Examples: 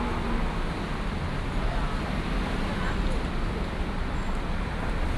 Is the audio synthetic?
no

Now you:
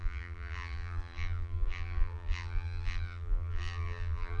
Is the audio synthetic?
yes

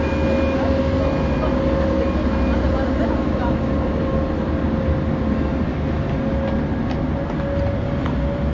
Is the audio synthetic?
no